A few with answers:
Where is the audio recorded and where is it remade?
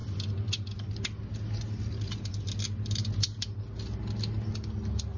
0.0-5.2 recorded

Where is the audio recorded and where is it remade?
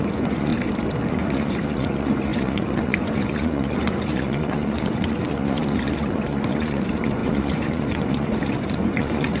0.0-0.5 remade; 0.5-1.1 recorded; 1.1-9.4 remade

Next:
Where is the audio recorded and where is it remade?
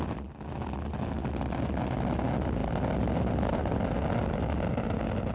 0.0-5.3 recorded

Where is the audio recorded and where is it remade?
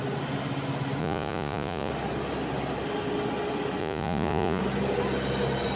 0.0-1.0 recorded; 1.0-1.9 remade; 1.9-3.8 recorded; 3.8-4.6 remade; 4.6-5.8 recorded